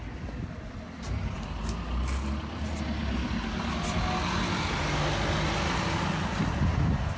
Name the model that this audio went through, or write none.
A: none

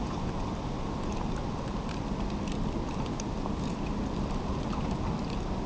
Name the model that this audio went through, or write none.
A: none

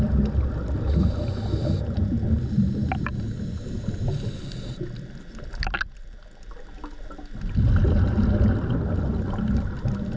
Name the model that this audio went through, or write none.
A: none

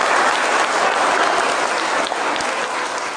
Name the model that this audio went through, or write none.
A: none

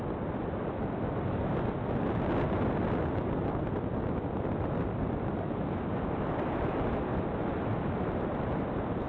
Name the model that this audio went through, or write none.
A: none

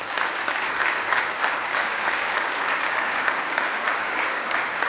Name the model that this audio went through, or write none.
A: codec, DAC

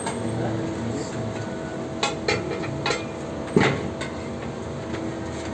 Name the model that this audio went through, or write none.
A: none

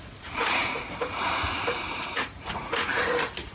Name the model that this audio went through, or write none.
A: vocoder, Vocos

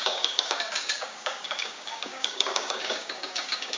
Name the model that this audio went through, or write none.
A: codec, DAC